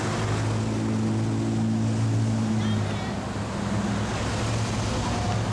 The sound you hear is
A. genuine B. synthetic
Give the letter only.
A